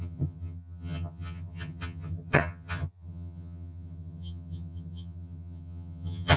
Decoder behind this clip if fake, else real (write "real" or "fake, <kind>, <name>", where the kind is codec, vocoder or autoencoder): fake, vocoder, HiFi-GAN